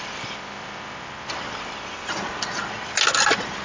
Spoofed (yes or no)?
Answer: no